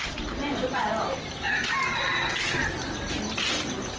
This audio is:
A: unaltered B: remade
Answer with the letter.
A